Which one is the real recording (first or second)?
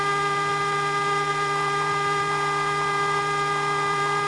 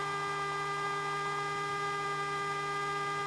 second